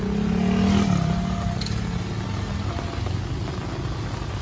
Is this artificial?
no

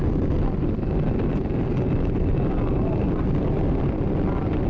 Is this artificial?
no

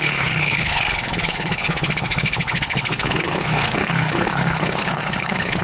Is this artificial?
yes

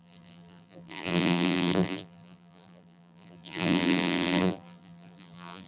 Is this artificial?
yes